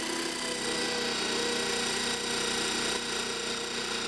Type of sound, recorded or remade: recorded